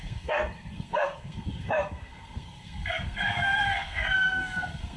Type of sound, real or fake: fake